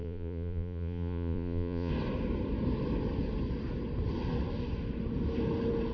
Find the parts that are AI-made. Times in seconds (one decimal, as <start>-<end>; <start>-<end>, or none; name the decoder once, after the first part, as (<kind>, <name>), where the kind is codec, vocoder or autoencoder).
0.0-1.9 (vocoder, Vocos)

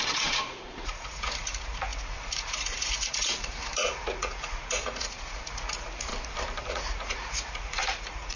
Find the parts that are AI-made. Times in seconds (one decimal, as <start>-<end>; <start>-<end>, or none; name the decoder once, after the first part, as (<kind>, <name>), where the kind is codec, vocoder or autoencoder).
0.0-6.1 (vocoder, Vocos); 6.7-8.4

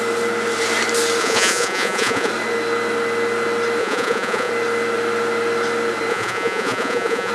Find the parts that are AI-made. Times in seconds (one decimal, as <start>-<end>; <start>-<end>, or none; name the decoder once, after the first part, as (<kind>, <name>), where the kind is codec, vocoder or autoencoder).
1.2-2.3 (vocoder, Vocos); 3.8-4.5; 6.1-7.3

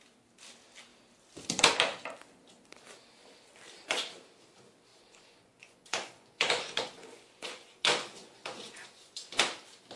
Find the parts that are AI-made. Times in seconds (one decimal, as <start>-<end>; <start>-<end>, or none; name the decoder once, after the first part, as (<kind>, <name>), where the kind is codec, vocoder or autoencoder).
4.9-9.4 (vocoder, Vocos)